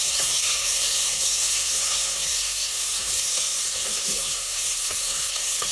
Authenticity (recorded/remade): remade